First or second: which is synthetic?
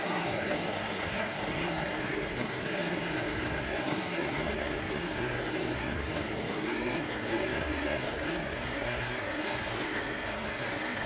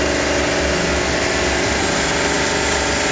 first